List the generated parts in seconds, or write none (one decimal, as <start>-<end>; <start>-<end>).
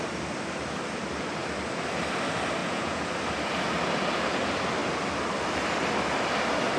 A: 2.6-3.1